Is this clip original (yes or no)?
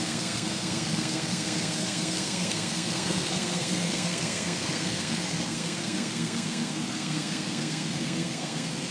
no